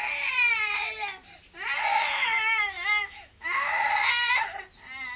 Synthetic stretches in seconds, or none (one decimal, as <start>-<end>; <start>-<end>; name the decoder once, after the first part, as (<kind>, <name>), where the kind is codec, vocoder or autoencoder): 1.9-3.9 (autoencoder, DAC-VAE)